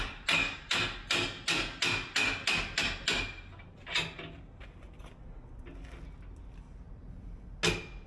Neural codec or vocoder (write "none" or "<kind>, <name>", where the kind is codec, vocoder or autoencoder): none